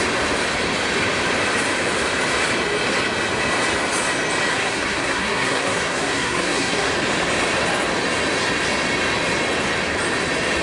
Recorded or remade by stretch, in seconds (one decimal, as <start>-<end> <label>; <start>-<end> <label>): 0.0-4.5 recorded; 4.5-6.9 remade; 6.9-10.6 recorded